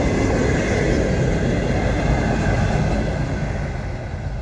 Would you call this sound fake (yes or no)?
no